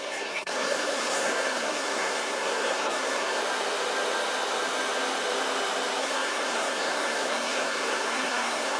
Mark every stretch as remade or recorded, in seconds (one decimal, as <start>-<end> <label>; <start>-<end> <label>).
0.0-3.4 remade; 3.4-6.0 recorded; 6.0-8.8 remade